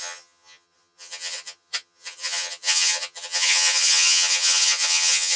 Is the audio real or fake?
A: fake